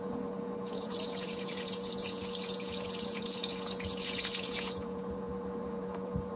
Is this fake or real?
fake